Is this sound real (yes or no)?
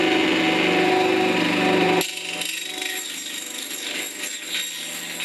yes